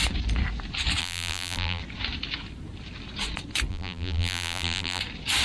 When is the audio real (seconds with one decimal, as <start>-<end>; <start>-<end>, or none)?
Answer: 0.0-1.0; 1.8-3.7; 5.0-5.4